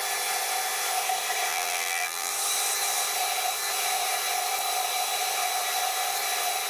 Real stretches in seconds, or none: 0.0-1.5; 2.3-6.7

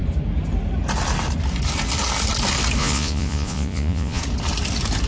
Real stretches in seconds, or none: 0.0-2.8; 4.2-5.1

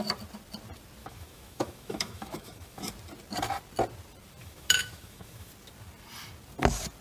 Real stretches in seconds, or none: 0.0-1.0; 2.9-4.4; 5.5-7.0

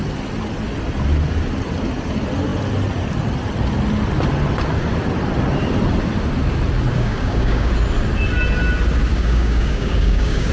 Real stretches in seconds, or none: 0.0-6.9; 7.7-9.1

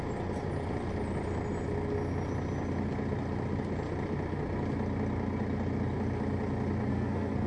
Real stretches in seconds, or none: 0.0-6.9

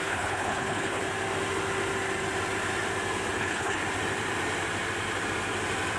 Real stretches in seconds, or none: 1.0-3.4; 3.8-6.0